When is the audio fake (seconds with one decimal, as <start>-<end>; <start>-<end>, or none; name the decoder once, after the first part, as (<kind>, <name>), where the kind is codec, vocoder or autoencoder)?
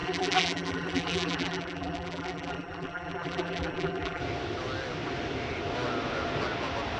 0.0-4.2 (vocoder, BigVGAN v2)